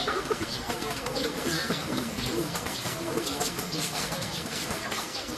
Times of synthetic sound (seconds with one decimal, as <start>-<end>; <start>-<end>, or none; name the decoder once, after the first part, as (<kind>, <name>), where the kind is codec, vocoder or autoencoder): 0.0-5.4 (codec, SNAC)